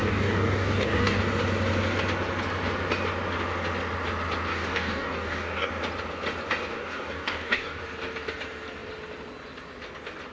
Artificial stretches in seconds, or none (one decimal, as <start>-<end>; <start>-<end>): 0.0-1.2; 4.5-5.7; 6.7-7.8

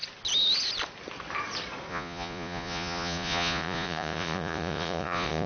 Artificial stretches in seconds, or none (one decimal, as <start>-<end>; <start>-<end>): 1.9-5.5

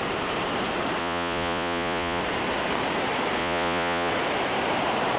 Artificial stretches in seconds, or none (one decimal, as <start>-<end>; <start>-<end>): 1.0-2.2; 3.4-4.1

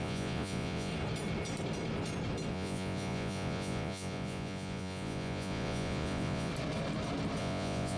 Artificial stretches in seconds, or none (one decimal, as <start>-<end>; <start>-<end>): 0.0-0.9; 2.5-6.5; 7.4-8.0

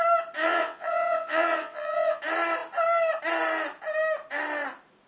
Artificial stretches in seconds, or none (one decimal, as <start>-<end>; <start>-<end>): 0.4-2.2